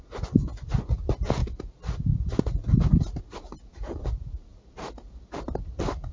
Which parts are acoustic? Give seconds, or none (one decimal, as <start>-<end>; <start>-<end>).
0.0-6.1